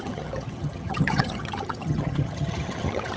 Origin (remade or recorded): remade